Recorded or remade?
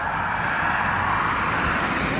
remade